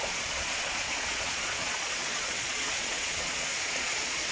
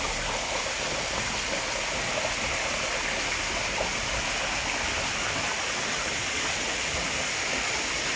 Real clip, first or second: second